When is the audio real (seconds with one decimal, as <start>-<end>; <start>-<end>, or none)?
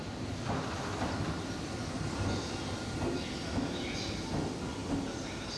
0.0-5.6